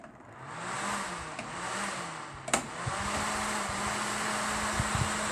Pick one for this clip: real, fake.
real